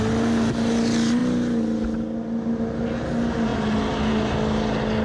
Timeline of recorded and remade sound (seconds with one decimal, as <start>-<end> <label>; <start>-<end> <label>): 0.0-5.0 recorded